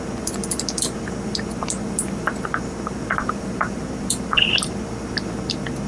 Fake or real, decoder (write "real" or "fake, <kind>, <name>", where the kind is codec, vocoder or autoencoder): real